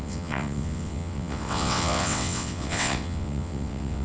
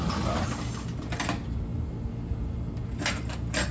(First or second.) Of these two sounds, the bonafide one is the second